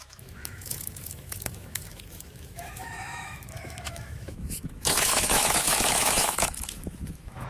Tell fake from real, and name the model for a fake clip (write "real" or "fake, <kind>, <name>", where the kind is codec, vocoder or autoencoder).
fake, autoencoder, DAC-VAE